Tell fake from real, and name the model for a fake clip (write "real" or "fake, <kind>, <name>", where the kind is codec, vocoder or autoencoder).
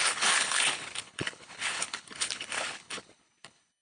fake, codec, HILCodec